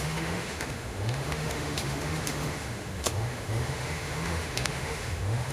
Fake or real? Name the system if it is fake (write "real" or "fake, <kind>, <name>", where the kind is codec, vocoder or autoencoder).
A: fake, autoencoder, DAC-VAE